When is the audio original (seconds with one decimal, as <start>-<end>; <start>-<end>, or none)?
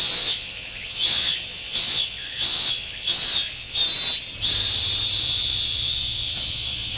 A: 3.8-5.2